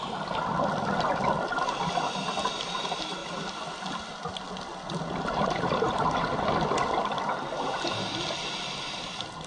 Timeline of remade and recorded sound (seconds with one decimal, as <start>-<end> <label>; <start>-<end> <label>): 0.0-9.5 recorded